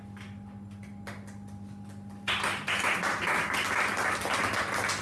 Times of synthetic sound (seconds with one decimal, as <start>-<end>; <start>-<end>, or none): none